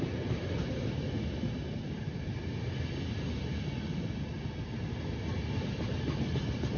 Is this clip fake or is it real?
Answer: real